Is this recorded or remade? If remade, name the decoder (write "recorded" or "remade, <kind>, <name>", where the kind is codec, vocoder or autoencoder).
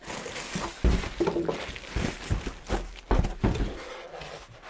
recorded